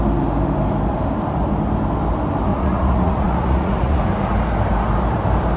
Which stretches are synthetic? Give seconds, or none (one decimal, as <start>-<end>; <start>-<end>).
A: 2.5-4.0

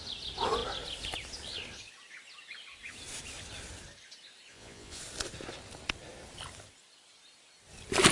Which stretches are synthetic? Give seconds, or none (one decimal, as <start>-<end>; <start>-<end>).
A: 4.5-5.0

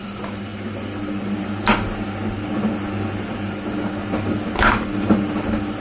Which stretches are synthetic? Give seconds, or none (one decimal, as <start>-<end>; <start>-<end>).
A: none

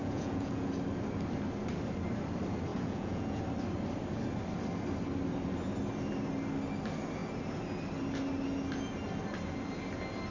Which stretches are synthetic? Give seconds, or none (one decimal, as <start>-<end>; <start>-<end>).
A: 0.0-0.7; 2.7-3.4

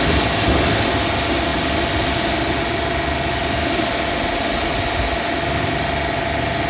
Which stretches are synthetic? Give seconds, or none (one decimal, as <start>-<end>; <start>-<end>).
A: none

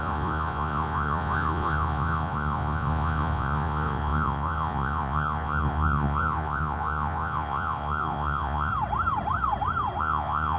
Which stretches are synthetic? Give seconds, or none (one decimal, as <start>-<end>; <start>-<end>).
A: 0.0-8.7; 10.0-10.6

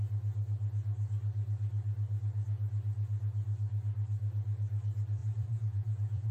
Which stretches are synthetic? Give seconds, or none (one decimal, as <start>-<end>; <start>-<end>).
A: 5.2-6.3

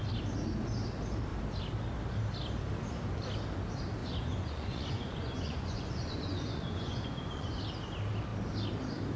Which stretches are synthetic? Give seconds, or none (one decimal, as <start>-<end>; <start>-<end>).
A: 4.0-7.6